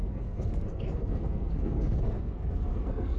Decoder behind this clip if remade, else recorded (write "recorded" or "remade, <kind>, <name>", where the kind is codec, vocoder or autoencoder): remade, codec, SNAC